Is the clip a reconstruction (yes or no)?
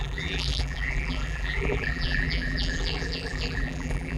yes